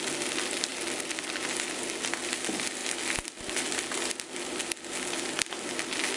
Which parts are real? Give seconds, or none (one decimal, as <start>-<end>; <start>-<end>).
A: 0.0-6.2